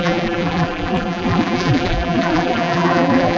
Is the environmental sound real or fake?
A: fake